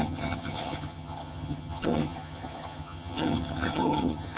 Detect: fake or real fake